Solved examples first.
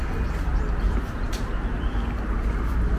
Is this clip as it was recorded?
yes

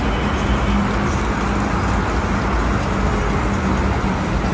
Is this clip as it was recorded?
yes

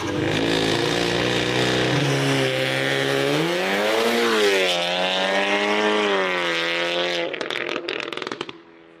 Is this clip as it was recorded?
yes